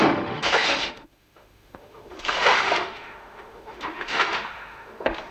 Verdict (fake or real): fake